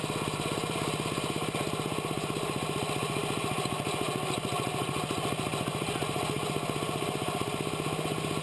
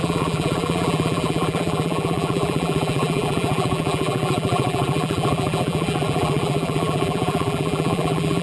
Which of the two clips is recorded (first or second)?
first